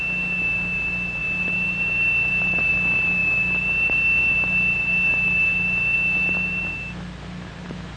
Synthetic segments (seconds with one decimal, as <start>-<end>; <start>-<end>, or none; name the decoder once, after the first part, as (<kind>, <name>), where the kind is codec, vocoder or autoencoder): none